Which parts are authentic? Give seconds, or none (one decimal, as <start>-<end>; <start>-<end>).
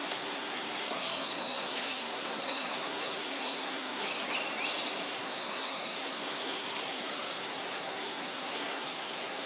4.1-5.0